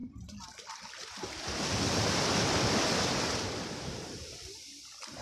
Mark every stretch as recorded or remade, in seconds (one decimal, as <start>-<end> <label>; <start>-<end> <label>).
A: 0.0-5.2 recorded